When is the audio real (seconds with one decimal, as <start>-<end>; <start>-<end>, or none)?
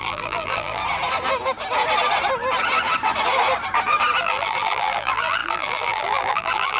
0.8-4.2